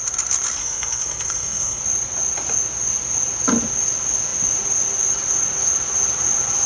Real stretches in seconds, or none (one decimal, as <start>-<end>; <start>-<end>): 0.0-0.6; 1.8-6.7